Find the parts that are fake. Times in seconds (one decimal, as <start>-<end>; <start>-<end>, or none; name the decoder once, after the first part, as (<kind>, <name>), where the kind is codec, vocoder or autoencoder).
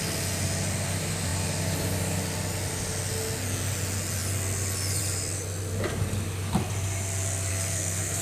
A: 7.5-8.2 (codec, SNAC)